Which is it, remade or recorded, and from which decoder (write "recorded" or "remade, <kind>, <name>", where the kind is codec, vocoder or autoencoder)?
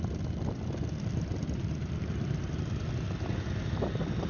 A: recorded